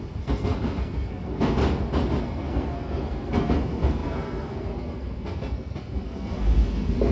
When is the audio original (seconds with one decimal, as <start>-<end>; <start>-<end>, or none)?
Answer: 1.6-2.2